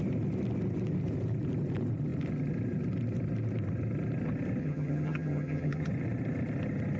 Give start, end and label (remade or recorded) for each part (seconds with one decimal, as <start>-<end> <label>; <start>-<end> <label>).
0.0-4.6 recorded; 4.6-5.9 remade; 5.9-7.0 recorded